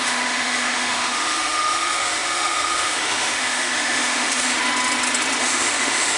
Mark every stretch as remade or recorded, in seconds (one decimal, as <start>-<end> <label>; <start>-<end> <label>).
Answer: 0.0-4.6 remade; 4.6-5.4 recorded; 5.4-6.2 remade